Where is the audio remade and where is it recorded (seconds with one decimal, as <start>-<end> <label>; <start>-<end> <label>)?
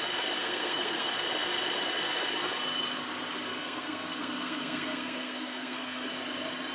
0.0-0.4 recorded; 0.4-1.1 remade; 1.1-3.5 recorded; 3.5-6.1 remade; 6.1-6.7 recorded